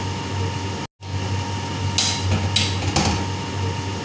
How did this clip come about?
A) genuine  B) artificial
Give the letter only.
A